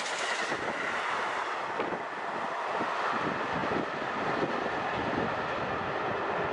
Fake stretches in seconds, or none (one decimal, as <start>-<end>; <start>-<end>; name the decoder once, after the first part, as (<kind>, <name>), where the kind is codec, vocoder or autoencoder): none